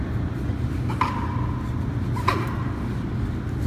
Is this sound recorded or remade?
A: recorded